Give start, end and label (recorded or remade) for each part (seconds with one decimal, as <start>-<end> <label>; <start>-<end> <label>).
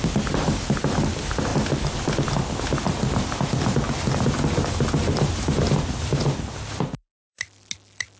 0.0-8.2 recorded